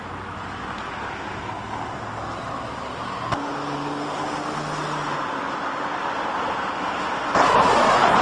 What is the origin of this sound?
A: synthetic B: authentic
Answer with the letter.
B